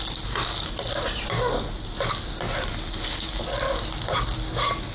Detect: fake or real real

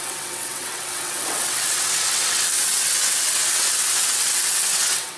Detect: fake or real fake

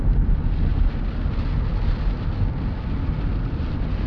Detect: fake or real real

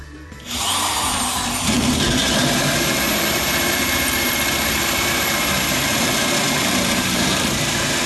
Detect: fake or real fake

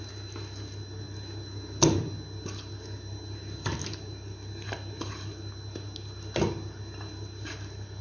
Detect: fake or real real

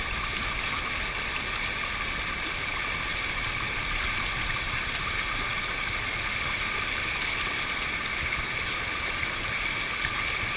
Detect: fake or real real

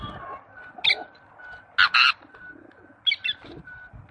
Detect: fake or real real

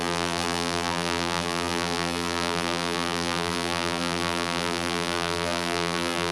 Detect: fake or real fake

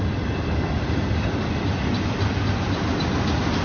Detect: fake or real real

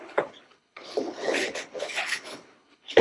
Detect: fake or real fake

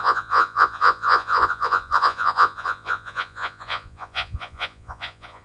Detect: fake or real fake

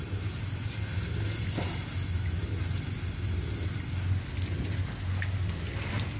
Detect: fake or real real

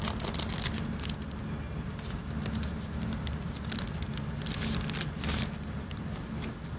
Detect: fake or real real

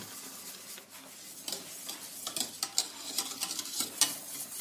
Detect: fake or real real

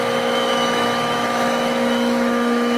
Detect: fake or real fake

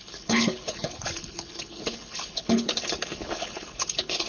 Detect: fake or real fake